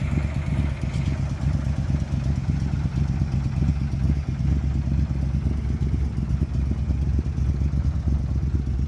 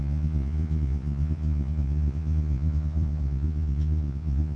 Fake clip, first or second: second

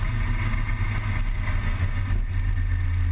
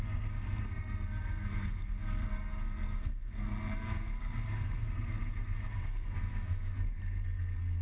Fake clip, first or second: second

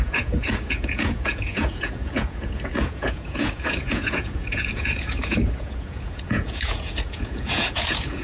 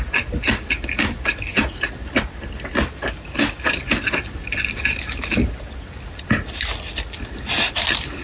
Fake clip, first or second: first